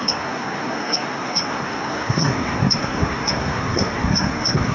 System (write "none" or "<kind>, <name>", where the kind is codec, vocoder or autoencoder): codec, SNAC